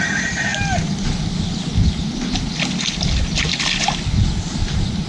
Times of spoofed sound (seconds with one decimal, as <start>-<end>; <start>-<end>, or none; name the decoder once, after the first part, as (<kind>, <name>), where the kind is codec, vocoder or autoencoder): none